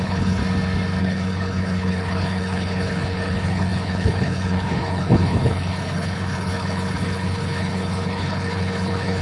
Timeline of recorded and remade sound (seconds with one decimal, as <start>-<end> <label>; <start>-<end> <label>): 0.0-0.4 remade; 0.4-1.0 recorded; 1.0-9.2 remade